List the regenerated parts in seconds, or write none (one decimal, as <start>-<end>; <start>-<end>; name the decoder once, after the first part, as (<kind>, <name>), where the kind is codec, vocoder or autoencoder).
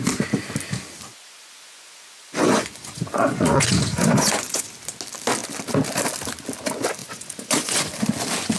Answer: 1.1-4.7 (vocoder, Vocos); 7.0-7.9